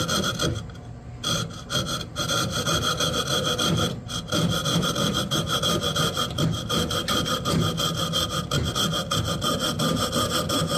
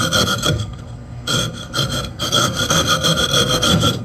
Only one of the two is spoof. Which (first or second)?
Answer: second